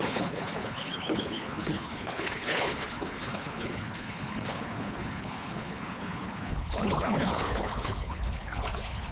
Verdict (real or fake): fake